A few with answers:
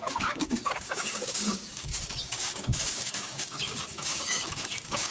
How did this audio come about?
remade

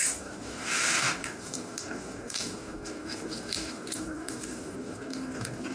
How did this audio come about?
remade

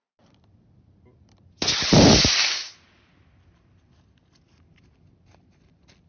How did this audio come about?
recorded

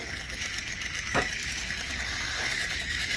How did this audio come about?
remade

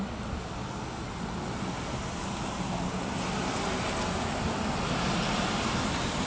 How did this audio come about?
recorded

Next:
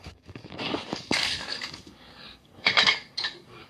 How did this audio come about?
remade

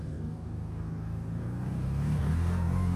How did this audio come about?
remade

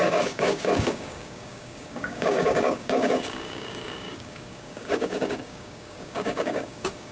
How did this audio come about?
remade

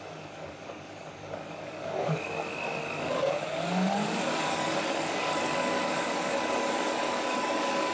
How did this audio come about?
remade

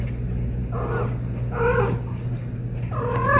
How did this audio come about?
recorded